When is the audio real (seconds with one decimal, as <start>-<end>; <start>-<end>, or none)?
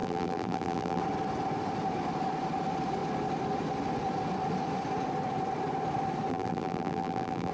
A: 1.0-6.3